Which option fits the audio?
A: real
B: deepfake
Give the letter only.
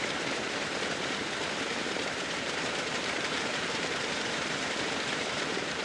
B